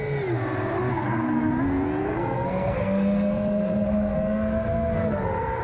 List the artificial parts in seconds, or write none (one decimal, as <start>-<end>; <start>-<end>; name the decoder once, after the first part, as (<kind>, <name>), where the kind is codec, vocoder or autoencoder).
0.9-1.5 (codec, SNAC); 2.0-5.6